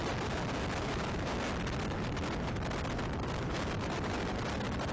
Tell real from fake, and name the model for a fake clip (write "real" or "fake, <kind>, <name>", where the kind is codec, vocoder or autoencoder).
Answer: real